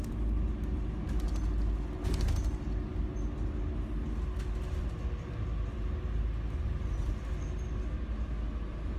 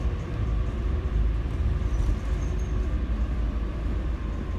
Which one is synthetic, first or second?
second